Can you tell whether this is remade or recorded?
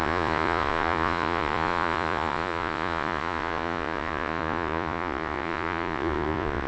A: remade